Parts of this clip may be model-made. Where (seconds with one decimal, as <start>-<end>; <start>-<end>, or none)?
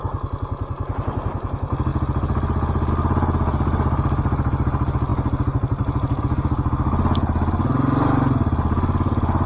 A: none